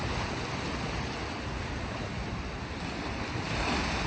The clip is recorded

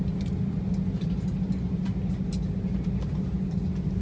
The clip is recorded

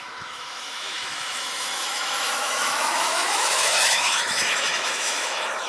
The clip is remade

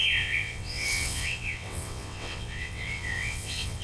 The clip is remade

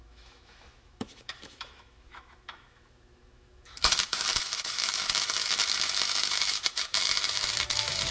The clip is remade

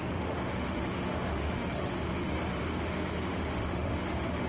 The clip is remade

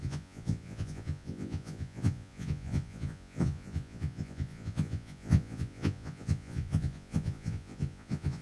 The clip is remade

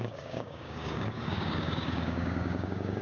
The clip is remade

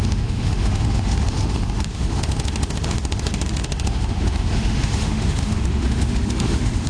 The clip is remade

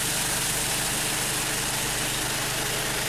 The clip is recorded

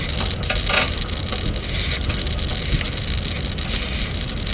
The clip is recorded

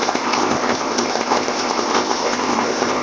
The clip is remade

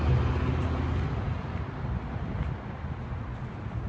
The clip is recorded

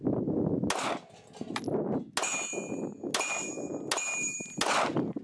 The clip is recorded